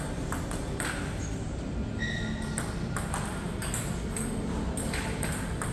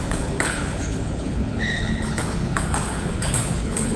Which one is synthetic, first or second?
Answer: second